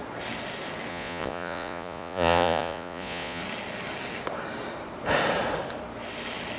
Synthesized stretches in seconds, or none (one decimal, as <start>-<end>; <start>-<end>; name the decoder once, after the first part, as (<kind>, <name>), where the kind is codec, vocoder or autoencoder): 0.9-3.4 (vocoder, Vocos)